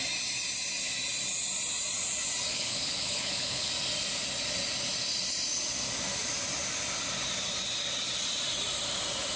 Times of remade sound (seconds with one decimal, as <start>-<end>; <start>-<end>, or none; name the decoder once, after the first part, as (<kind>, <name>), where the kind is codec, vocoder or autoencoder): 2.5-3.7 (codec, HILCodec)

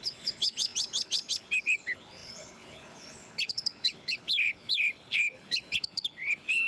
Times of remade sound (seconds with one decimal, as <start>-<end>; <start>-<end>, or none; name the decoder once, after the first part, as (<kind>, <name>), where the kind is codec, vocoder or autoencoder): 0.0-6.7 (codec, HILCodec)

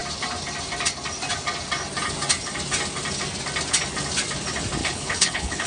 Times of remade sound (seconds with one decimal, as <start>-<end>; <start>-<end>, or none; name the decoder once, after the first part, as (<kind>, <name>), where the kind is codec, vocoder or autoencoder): 4.8-5.7 (codec, HILCodec)

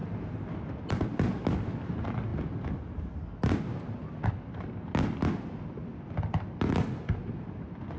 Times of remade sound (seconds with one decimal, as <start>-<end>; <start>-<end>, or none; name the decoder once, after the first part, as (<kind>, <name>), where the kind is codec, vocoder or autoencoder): none

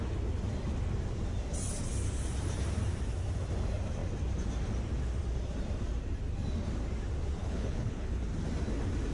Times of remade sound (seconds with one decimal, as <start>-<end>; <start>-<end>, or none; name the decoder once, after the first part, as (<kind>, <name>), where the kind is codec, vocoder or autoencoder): 7.4-8.2 (codec, HILCodec)